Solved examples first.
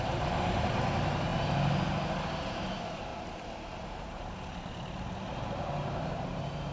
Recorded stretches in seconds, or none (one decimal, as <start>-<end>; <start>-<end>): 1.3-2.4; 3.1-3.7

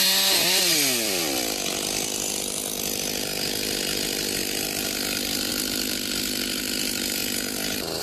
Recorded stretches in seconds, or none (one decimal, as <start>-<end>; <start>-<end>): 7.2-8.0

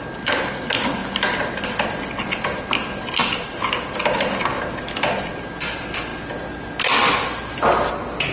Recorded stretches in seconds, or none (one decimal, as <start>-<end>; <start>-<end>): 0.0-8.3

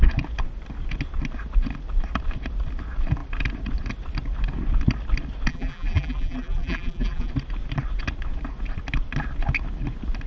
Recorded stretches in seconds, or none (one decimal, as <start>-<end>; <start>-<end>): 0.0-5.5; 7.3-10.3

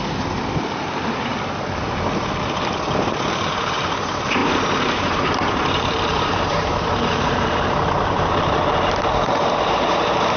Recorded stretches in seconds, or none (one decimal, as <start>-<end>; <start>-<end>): 1.3-3.3

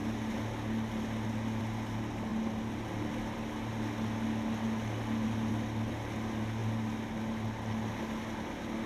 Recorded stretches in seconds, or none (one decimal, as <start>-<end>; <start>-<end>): 0.0-8.9

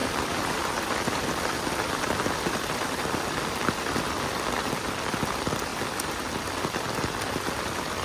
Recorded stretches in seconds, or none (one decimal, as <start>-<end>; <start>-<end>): 5.7-7.6